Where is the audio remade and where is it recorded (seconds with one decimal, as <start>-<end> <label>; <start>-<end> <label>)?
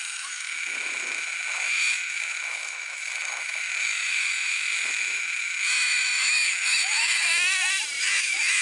0.0-7.3 remade; 7.3-8.0 recorded; 8.0-8.6 remade